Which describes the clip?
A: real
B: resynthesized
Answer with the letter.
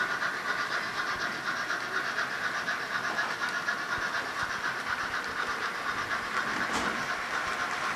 A